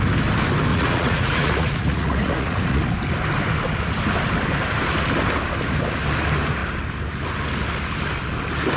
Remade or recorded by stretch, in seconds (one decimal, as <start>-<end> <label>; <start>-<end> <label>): 0.0-0.7 recorded; 0.7-2.8 remade; 2.8-8.8 recorded